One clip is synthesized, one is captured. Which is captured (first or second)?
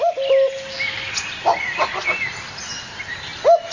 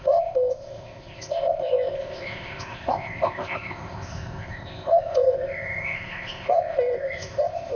first